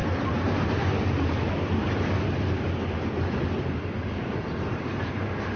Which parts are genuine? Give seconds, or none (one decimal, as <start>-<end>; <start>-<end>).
0.0-0.9; 1.8-4.0